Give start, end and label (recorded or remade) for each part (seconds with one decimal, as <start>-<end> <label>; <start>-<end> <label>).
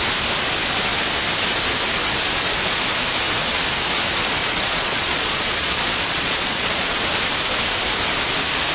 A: 0.0-4.4 recorded; 4.4-7.0 remade; 7.0-8.7 recorded